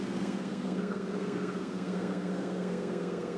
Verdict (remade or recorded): remade